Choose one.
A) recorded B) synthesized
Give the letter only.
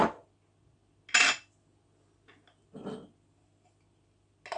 A